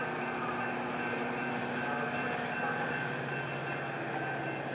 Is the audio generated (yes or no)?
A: no